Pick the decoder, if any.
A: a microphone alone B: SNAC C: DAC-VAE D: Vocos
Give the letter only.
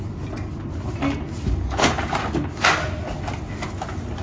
A